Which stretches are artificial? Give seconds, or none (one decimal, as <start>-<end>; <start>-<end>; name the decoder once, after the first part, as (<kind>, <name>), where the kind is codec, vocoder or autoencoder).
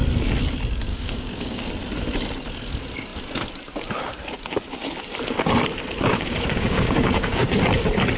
0.9-1.7 (codec, DAC); 6.1-7.6